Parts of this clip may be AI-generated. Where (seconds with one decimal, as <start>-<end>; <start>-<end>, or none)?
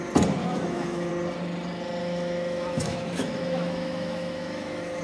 0.4-1.1; 2.0-5.0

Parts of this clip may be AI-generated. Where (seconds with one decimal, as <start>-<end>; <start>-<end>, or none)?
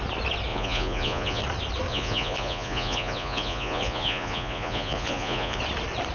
0.5-1.4; 1.9-5.6